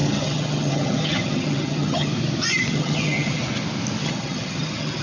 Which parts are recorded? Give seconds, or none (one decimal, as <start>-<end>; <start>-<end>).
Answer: 2.1-2.7; 3.4-4.0